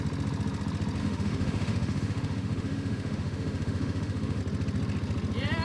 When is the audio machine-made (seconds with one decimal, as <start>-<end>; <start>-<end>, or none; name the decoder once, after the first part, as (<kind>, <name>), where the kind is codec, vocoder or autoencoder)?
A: 1.0-4.4 (autoencoder, DAC-VAE)